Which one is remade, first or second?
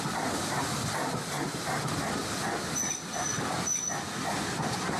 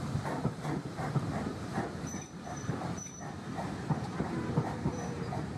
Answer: second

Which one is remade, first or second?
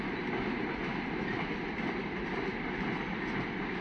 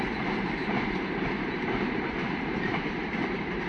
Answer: second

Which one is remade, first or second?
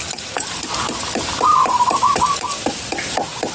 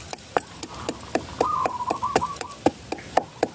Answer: first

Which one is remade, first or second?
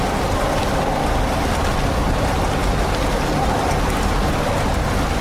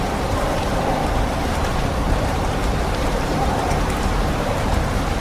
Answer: second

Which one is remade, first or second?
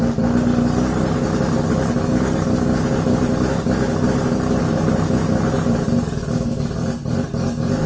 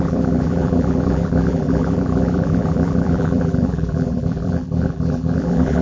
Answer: second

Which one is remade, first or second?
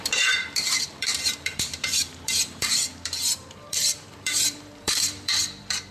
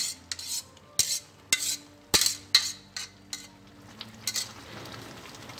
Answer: first